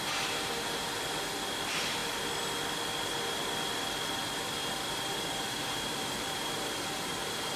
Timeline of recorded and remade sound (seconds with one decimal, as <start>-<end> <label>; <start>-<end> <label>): 0.0-4.6 recorded; 4.6-7.6 remade